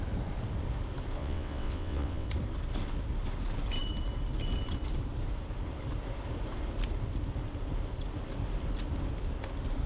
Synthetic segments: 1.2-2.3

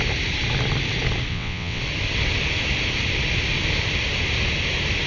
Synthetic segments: 1.3-1.8

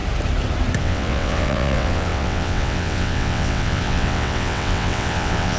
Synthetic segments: 0.8-5.6

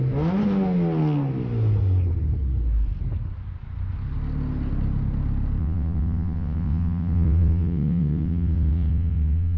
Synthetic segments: 5.6-9.6

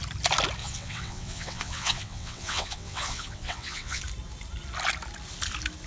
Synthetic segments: 0.6-4.0

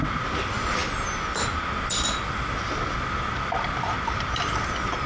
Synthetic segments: none

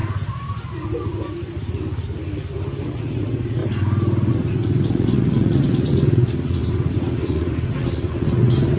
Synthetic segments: 2.8-3.6; 4.3-8.8